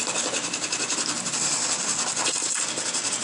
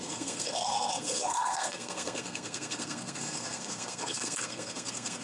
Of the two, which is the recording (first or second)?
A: first